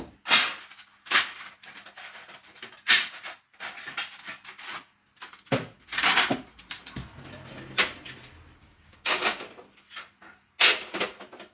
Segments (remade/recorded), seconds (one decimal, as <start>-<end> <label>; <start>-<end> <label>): 0.0-8.6 recorded; 8.6-9.5 remade; 9.5-11.5 recorded